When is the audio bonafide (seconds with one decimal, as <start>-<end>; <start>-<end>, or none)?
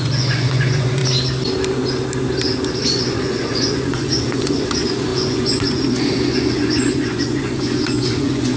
1.0-2.8